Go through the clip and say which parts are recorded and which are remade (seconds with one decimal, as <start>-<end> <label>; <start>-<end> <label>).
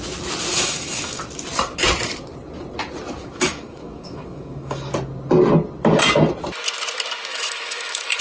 0.0-0.5 recorded; 0.5-1.2 remade; 1.2-3.2 recorded; 3.2-4.9 remade; 4.9-7.3 recorded; 7.3-8.2 remade